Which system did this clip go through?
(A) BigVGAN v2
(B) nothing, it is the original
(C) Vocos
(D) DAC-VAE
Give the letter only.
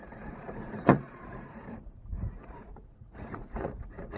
C